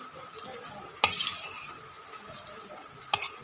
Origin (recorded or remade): recorded